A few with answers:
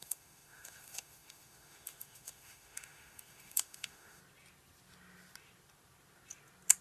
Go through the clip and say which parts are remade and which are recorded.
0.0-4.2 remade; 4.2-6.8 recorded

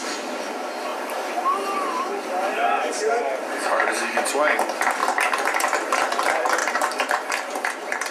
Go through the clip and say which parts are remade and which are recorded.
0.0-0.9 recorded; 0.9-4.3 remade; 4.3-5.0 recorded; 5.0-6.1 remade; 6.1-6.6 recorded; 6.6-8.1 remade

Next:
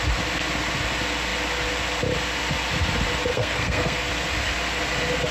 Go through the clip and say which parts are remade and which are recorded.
0.0-3.3 recorded; 3.3-4.1 remade; 4.1-5.3 recorded

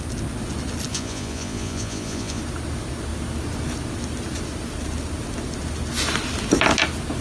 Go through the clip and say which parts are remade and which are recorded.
0.0-0.9 recorded; 0.9-2.4 remade; 2.4-7.2 recorded

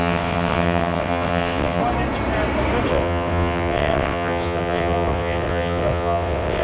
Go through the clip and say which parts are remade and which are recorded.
0.0-1.8 remade; 1.8-2.9 recorded; 2.9-6.6 remade

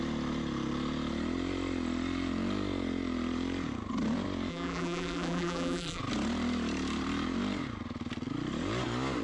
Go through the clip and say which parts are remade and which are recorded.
0.0-4.5 recorded; 4.5-6.0 remade; 6.0-9.2 recorded